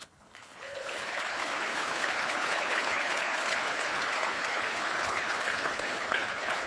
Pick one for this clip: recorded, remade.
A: remade